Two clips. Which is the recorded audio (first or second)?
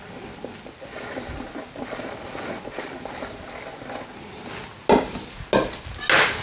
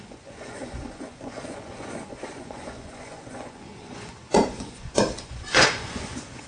first